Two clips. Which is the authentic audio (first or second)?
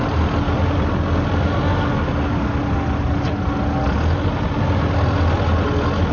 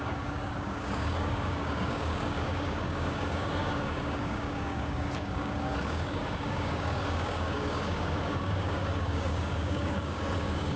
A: first